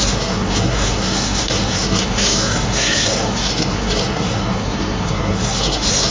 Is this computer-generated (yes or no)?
yes